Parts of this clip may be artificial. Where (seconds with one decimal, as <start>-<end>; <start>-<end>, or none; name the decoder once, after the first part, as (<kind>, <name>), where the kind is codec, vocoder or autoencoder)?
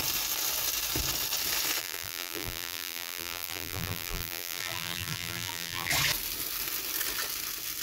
1.8-5.9 (vocoder, BigVGAN v2)